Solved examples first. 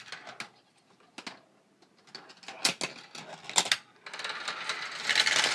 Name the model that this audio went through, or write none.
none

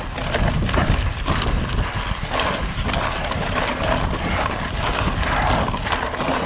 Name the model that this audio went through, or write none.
none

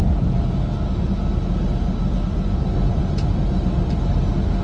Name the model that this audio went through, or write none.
none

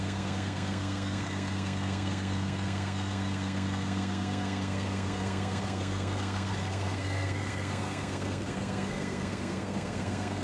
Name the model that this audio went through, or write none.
codec, SNAC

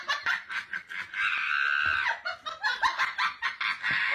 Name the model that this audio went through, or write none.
none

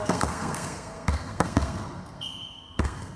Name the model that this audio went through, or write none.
codec, SNAC